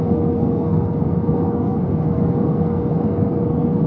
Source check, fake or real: fake